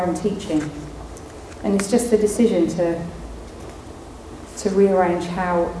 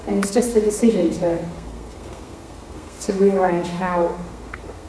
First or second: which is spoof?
second